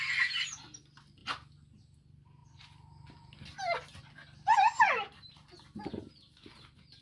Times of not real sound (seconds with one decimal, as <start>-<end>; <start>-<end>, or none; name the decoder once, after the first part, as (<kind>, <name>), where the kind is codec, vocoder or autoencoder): 4.5-5.9 (vocoder, BigVGAN v2)